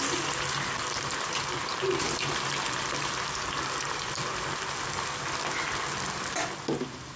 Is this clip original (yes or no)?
yes